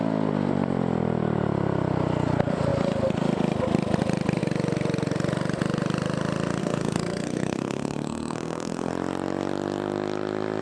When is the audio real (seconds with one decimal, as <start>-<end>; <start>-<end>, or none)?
0.0-6.6; 8.9-10.6